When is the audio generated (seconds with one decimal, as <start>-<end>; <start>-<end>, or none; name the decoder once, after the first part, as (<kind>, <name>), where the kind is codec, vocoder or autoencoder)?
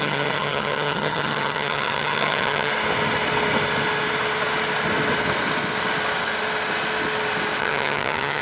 0.0-2.7 (vocoder, HiFi-GAN); 7.6-8.4